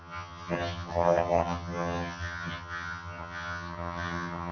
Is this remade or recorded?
remade